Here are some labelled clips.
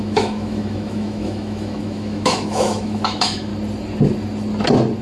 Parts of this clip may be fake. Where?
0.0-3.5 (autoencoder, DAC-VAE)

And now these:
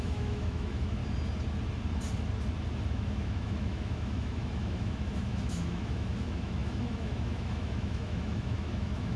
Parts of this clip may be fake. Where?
0.0-1.0 (autoencoder, DAC-VAE); 2.9-9.2

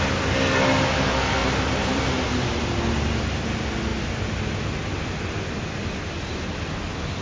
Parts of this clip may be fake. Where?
1.4-2.0 (vocoder, BigVGAN v2)

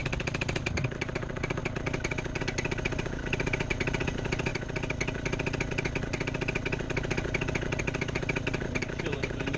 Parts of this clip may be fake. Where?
1.0-1.6 (vocoder, BigVGAN v2); 2.4-4.5; 7.8-9.6

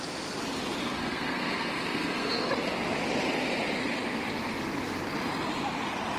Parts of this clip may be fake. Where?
0.8-2.5 (codec, SNAC)

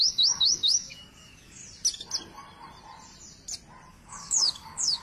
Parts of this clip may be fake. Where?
0.0-1.6 (codec, DAC); 3.9-5.0

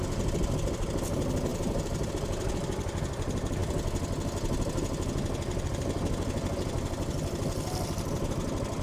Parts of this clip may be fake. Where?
1.5-2.1 (vocoder, BigVGAN v2)

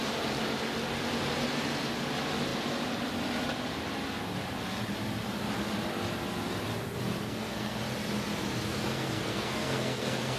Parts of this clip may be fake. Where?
7.2-7.8 (codec, SNAC); 8.7-10.4